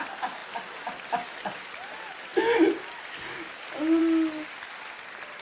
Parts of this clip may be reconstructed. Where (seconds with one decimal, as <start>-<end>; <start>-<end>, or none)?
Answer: none